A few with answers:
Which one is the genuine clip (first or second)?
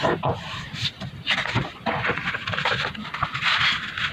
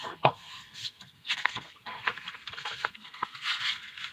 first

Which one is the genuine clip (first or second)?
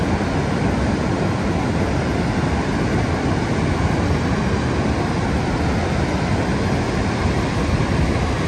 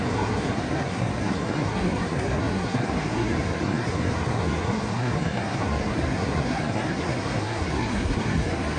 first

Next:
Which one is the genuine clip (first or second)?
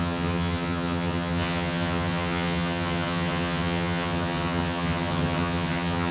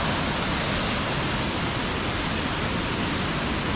second